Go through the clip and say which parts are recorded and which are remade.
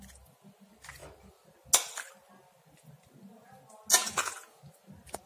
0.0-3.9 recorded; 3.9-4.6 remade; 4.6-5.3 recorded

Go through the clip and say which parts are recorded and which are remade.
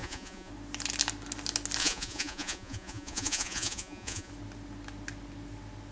0.0-0.5 remade; 0.5-1.8 recorded; 1.8-4.3 remade; 4.3-5.9 recorded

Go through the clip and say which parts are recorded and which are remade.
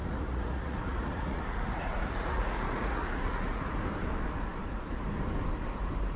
0.0-3.7 remade; 3.7-6.2 recorded